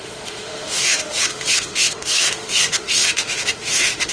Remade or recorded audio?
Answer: remade